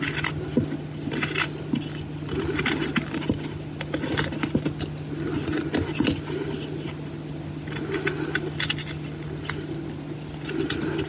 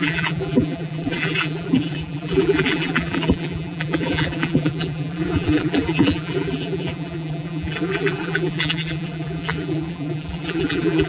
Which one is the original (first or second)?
first